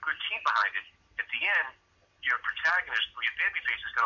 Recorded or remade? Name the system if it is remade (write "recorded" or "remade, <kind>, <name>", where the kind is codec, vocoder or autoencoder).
recorded